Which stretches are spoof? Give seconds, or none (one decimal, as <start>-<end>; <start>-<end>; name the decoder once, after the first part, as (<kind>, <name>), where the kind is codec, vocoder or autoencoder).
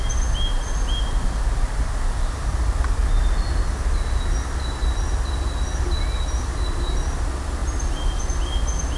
none